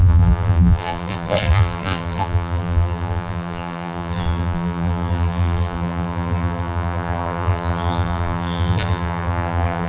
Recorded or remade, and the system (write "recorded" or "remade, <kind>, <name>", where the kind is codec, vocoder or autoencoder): remade, vocoder, BigVGAN v2